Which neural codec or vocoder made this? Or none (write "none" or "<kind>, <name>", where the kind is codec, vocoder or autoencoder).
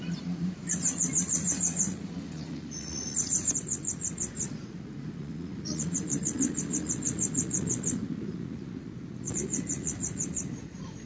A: vocoder, Vocos